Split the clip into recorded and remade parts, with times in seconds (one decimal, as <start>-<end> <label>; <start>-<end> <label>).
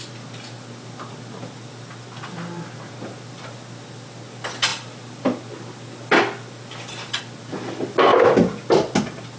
0.0-4.7 recorded; 4.7-7.2 remade; 7.2-8.1 recorded; 8.1-8.7 remade; 8.7-9.4 recorded